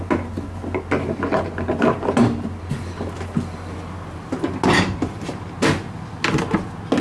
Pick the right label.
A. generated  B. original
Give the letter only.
B